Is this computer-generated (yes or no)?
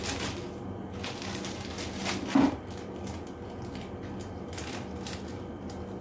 no